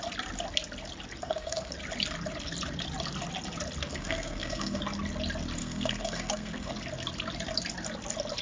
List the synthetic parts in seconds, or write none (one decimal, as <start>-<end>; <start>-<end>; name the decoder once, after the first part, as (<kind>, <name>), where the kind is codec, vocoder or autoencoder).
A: 1.2-1.7 (codec, SNAC); 3.9-4.8; 5.6-6.7